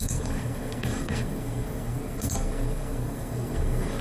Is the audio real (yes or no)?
no